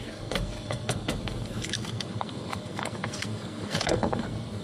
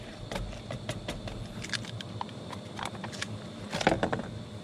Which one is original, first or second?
second